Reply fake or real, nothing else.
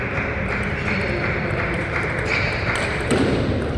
real